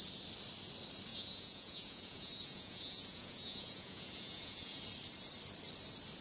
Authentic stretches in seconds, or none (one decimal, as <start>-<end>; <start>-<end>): 0.0-1.1; 4.8-6.2